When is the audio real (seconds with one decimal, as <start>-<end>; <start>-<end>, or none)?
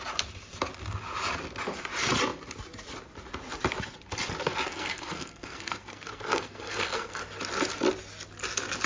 0.0-4.7; 7.2-8.9